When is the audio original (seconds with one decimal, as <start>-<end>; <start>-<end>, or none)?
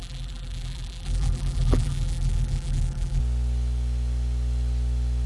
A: 3.2-5.3